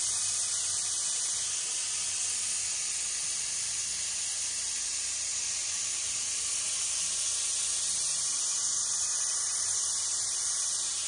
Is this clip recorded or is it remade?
recorded